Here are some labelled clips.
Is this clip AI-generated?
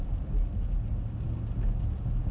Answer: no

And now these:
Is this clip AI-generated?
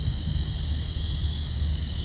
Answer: yes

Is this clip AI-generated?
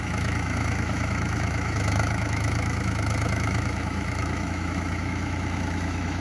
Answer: yes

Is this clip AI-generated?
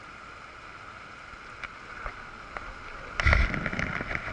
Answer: no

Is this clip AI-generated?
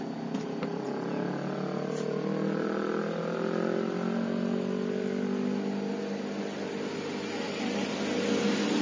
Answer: no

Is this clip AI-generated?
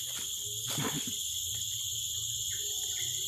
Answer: no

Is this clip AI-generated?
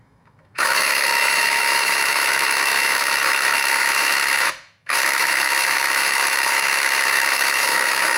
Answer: yes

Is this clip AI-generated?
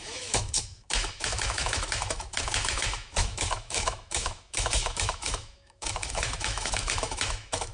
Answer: yes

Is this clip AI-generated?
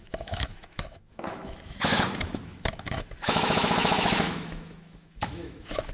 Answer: yes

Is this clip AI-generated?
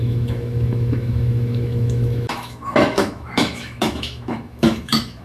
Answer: yes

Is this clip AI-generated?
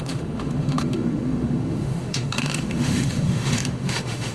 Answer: yes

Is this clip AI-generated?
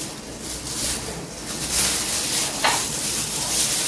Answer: no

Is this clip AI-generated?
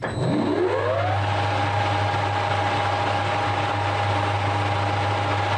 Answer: no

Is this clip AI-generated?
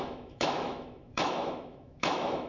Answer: yes